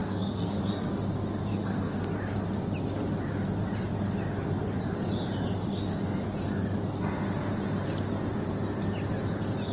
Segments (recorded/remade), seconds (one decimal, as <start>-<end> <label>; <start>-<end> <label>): 0.0-0.6 remade; 0.6-1.5 recorded; 1.5-2.0 remade; 2.0-9.7 recorded